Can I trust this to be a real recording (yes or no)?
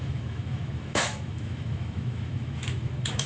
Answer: no